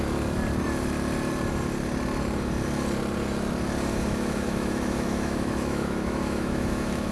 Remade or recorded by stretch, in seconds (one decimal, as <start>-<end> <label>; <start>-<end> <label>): 0.0-3.9 recorded; 3.9-7.1 remade